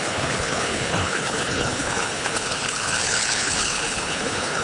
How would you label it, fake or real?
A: fake